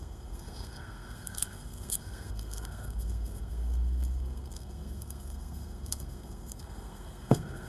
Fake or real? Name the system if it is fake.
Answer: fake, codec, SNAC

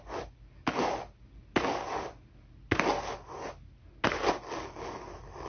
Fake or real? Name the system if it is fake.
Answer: real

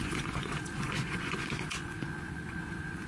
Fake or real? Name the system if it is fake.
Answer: fake, vocoder, Vocos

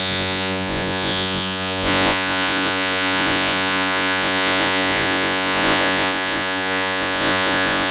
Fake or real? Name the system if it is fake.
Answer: fake, vocoder, Vocos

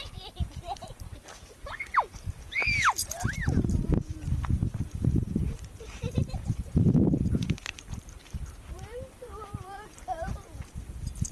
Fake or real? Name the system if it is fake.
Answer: fake, vocoder, BigVGAN v2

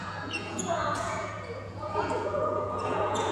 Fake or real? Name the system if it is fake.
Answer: fake, vocoder, Vocos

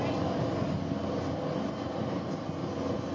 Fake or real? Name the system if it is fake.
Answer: real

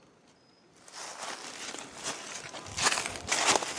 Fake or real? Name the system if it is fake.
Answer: real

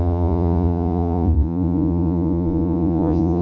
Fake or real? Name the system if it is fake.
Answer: fake, vocoder, Vocos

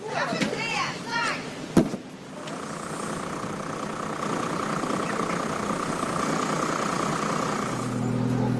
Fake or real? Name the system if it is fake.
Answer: real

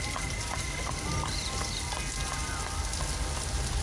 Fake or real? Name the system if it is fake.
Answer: real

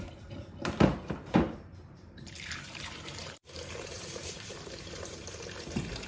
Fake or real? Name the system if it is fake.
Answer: fake, vocoder, BigVGAN v2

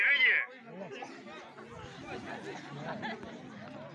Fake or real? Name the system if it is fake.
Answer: real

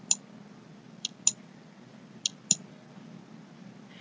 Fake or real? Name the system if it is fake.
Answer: real